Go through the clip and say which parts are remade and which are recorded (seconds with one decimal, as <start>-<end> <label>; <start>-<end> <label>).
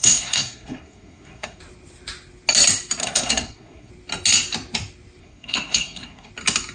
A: 0.0-1.6 remade; 1.6-3.0 recorded; 3.0-3.9 remade; 3.9-5.2 recorded; 5.2-6.3 remade; 6.3-6.7 recorded